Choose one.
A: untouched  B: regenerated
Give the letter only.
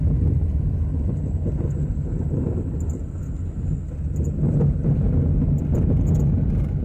A